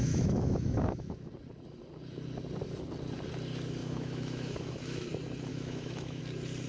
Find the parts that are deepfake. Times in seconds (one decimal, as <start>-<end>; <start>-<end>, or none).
0.0-1.3; 3.8-5.1; 5.5-6.2